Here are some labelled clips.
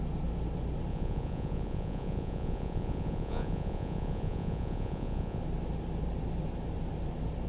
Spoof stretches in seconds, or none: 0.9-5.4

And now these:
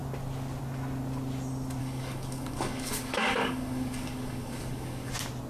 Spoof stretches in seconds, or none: 1.8-5.1